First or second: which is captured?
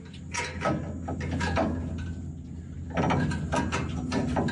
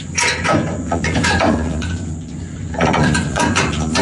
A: first